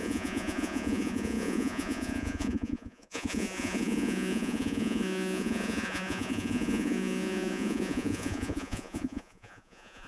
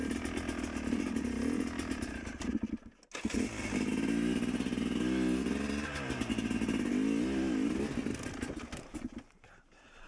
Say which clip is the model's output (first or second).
first